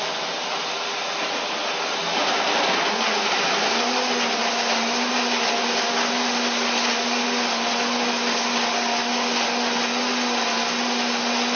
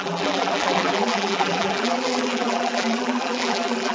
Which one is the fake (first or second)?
second